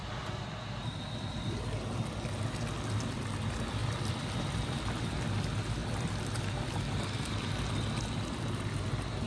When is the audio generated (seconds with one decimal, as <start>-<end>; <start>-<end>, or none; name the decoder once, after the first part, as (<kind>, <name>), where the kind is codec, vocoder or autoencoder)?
0.0-1.6 (vocoder, BigVGAN v2); 3.8-5.0; 5.8-8.0